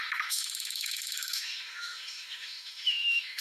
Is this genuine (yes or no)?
no